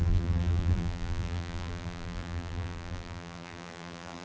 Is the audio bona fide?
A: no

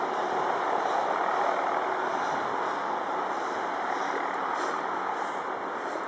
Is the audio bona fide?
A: yes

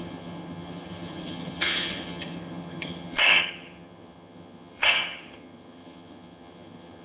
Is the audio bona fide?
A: no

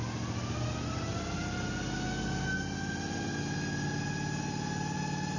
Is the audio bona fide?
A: yes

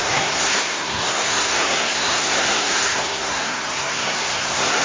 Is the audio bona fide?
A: no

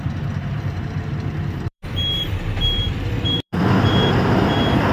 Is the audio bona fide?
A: no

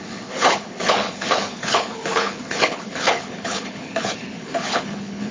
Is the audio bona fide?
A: no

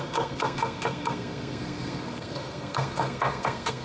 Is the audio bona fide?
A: no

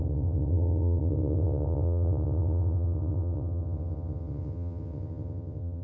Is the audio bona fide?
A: no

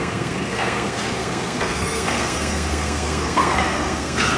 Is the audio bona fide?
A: no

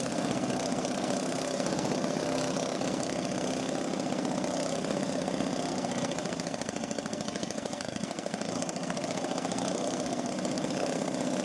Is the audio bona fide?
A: no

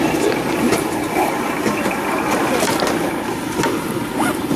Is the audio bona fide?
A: yes